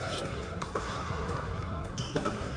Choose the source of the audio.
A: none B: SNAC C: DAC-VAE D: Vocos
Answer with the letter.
B